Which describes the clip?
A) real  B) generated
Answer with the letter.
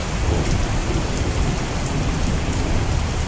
A